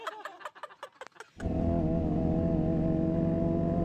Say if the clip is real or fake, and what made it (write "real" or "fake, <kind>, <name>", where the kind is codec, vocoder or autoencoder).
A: real